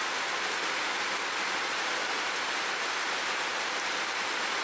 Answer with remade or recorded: recorded